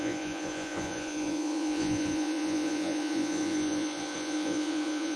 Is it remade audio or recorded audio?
remade